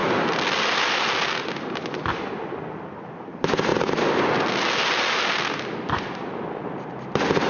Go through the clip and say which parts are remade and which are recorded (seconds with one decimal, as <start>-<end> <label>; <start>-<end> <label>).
0.0-7.5 recorded